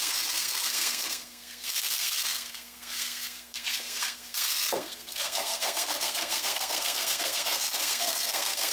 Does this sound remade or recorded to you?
remade